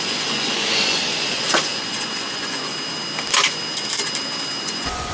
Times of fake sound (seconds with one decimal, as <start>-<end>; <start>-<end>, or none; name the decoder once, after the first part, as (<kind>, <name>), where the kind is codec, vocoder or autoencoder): 0.0-2.7 (vocoder, Vocos); 4.6-5.1